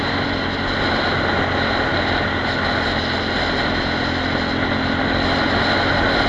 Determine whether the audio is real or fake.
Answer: real